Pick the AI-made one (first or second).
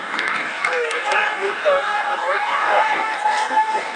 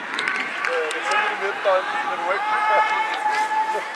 first